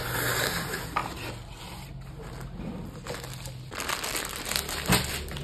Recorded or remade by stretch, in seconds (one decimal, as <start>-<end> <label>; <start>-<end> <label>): 0.0-5.4 recorded